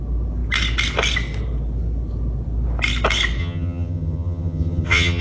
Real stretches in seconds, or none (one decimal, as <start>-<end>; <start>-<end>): 0.0-3.4